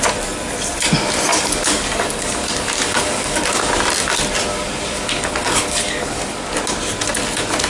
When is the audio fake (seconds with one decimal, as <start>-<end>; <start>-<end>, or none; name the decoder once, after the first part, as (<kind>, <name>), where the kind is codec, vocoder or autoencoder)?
1.3-3.7 (codec, DAC); 4.5-6.6